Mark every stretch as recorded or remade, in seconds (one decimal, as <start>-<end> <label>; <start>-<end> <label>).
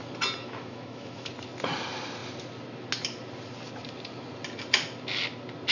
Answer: 0.0-0.4 recorded; 0.4-1.3 remade; 1.3-5.7 recorded